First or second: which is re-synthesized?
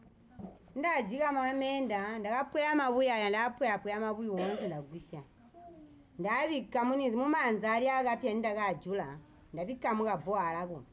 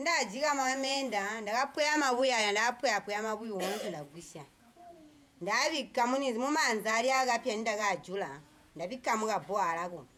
second